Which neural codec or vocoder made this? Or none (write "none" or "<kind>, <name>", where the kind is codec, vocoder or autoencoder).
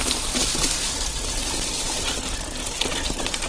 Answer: none